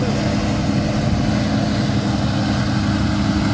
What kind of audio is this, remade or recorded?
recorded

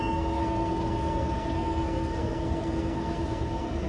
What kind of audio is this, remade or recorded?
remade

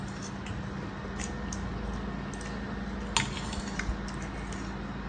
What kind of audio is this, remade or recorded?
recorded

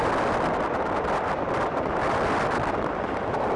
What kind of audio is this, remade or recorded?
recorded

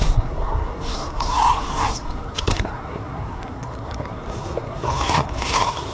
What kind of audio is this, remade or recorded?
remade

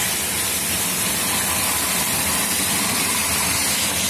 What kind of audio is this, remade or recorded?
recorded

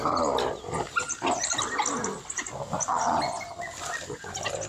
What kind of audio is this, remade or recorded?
recorded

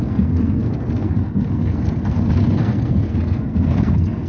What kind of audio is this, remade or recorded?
remade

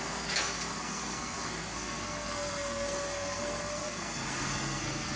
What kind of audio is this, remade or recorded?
remade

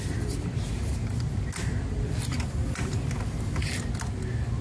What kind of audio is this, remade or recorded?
recorded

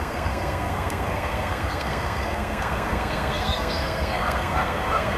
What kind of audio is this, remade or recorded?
remade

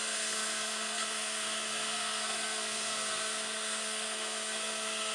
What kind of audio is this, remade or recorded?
remade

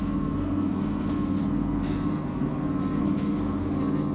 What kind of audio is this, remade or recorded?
remade